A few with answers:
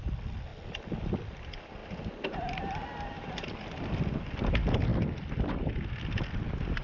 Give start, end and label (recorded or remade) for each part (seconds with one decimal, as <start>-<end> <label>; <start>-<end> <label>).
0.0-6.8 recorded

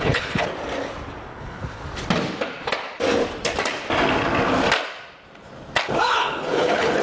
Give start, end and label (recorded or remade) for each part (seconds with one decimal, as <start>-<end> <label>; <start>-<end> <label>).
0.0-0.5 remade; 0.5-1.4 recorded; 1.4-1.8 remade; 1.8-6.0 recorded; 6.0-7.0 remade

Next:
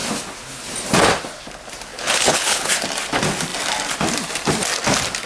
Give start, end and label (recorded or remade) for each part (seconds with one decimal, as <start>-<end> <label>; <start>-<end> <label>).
0.0-1.9 recorded; 1.9-2.7 remade; 2.7-5.3 recorded

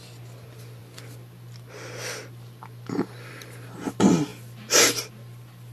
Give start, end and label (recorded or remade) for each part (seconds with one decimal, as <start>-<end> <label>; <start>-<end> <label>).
0.0-5.7 recorded